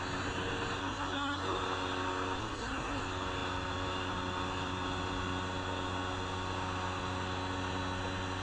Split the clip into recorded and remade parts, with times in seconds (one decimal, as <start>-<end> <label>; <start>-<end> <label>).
0.0-0.8 recorded; 0.8-1.6 remade; 1.6-2.4 recorded; 2.4-3.0 remade; 3.0-8.4 recorded